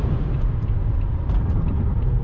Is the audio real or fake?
fake